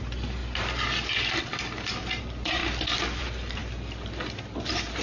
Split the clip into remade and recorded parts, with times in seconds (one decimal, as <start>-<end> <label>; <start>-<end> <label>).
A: 0.0-0.4 remade; 0.4-2.2 recorded; 2.2-2.6 remade; 2.6-3.2 recorded; 3.2-3.6 remade; 3.6-4.6 recorded; 4.6-5.0 remade